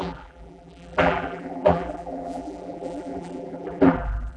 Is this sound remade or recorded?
remade